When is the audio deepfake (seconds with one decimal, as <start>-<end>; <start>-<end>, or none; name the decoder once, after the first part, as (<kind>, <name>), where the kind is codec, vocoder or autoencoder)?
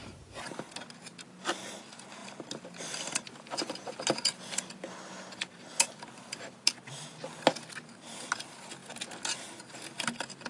none